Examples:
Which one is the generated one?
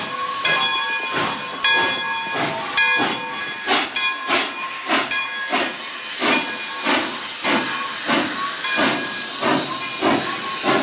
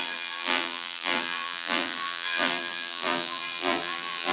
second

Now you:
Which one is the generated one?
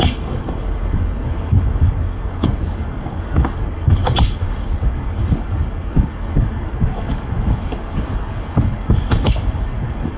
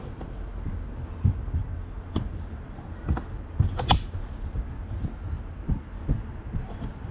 first